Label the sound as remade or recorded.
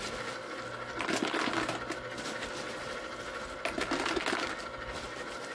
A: recorded